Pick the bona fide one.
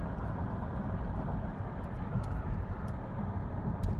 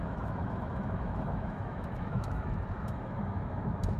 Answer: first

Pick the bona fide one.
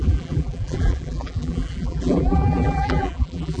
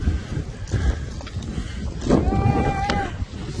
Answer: second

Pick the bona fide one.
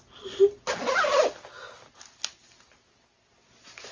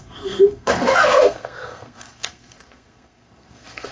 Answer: first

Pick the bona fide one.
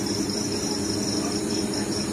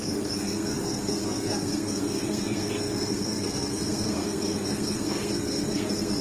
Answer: first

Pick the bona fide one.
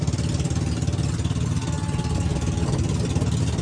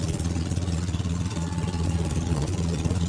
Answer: first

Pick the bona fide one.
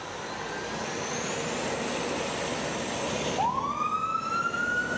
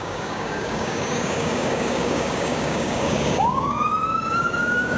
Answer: first